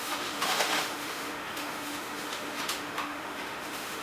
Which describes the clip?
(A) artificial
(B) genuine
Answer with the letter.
A